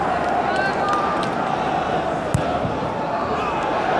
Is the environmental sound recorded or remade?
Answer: recorded